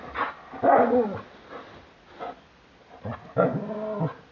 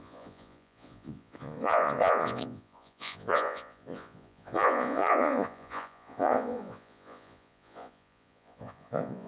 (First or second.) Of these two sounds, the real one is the first